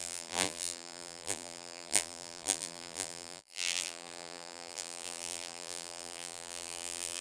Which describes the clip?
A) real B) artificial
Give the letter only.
B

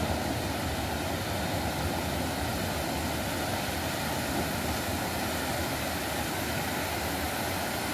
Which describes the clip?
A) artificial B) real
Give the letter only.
B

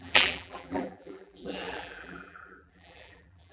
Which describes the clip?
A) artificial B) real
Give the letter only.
A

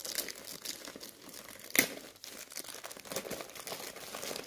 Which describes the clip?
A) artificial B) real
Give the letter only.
B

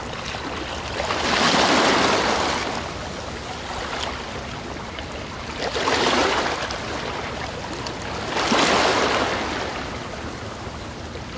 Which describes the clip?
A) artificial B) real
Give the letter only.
B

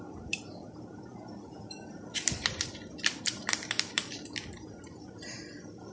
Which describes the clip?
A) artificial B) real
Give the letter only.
A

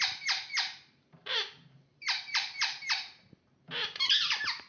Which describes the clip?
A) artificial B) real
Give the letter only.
A